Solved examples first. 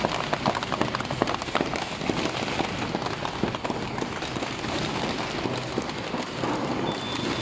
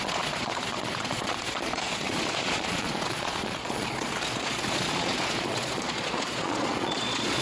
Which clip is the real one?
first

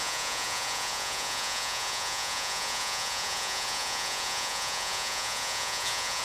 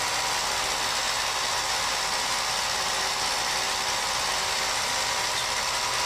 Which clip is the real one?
second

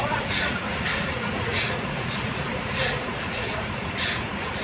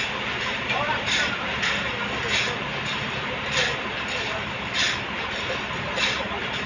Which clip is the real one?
second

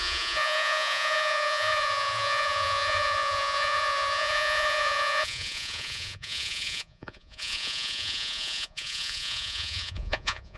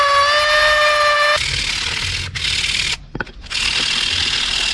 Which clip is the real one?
second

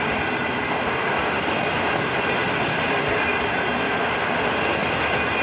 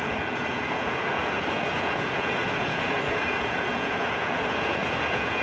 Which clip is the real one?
first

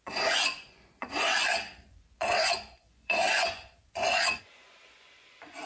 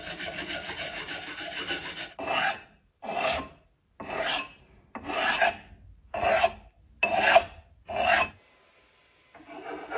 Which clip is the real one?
second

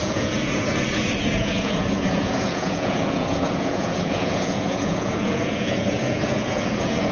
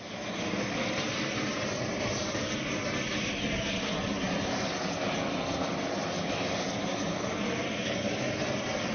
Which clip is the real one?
second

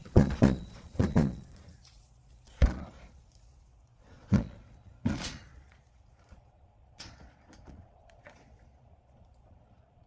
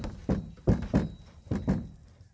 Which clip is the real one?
second